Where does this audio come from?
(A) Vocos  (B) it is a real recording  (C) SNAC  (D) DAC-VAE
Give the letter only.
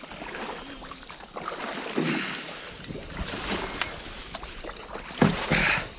B